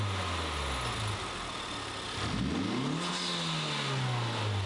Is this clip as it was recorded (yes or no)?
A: yes